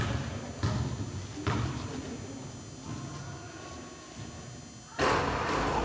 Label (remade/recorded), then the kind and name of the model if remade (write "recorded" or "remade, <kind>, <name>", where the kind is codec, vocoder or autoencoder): recorded